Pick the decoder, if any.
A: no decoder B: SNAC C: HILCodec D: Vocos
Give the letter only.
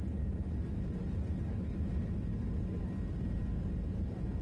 A